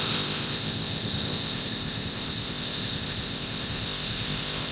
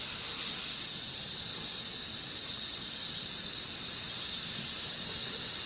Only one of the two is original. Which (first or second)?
second